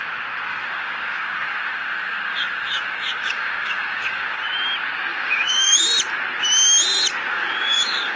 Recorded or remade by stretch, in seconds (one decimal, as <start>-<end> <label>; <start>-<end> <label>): 0.0-0.5 recorded; 0.5-4.4 remade; 4.4-5.1 recorded; 5.1-5.8 remade; 5.8-7.3 recorded; 7.3-8.2 remade